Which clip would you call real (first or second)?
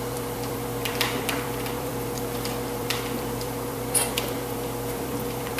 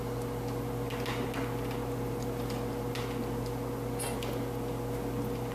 second